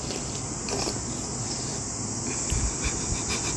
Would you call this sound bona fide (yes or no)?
yes